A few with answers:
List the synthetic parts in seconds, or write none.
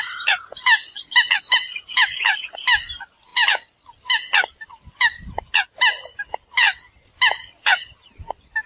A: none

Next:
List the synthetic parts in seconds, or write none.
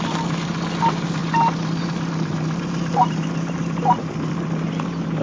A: none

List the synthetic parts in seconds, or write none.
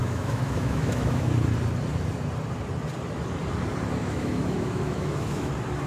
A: 0.0-1.3 (autoencoder, DAC-VAE); 4.0-5.5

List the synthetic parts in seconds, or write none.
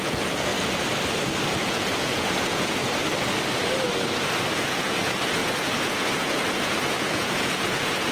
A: 0.0-0.5 (vocoder, Vocos); 1.6-2.8; 4.5-8.1